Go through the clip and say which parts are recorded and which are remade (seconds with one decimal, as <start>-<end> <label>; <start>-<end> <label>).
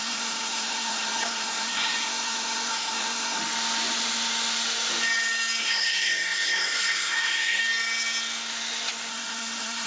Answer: 0.0-3.4 remade; 3.4-5.6 recorded; 5.6-7.6 remade; 7.6-9.1 recorded; 9.1-9.9 remade